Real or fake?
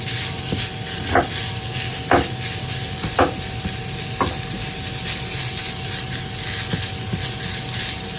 real